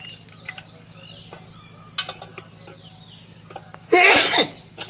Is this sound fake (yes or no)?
no